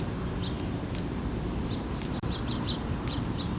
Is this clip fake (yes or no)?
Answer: no